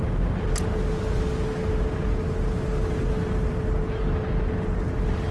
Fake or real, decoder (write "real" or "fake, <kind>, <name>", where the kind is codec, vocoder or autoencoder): real